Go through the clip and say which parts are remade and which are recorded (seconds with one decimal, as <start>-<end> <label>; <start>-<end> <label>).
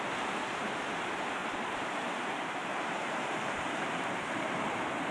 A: 0.0-1.4 recorded; 1.4-4.5 remade; 4.5-5.1 recorded